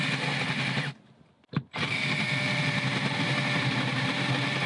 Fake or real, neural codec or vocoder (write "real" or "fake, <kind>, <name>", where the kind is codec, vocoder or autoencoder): real